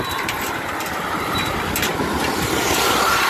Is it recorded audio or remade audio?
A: recorded